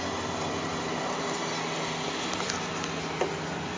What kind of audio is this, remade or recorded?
recorded